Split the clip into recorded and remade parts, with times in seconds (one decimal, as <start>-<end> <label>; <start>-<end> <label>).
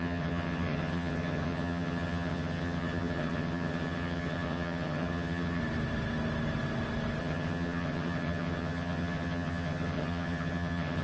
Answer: 0.0-5.6 remade; 5.6-7.2 recorded; 7.2-11.0 remade